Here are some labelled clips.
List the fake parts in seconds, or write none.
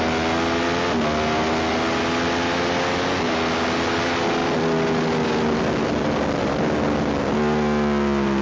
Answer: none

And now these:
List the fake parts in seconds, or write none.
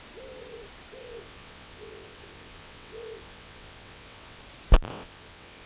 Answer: 1.0-4.4 (vocoder, WaveNeXt); 4.9-5.7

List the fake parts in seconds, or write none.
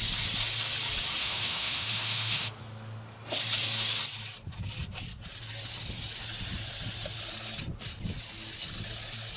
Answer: 1.2-2.6 (autoencoder, DAC-VAE)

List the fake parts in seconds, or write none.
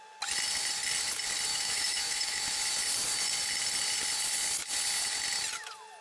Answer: 1.5-2.6 (autoencoder, DAC-VAE)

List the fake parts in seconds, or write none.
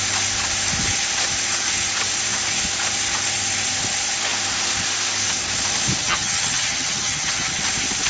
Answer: 6.0-7.6 (vocoder, HiFi-GAN)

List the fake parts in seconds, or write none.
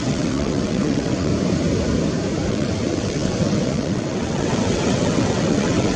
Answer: 0.0-1.3 (vocoder, WaveNeXt); 2.5-6.0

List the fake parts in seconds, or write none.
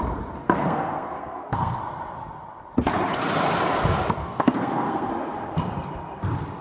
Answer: 0.4-1.8 (codec, SNAC); 4.2-5.1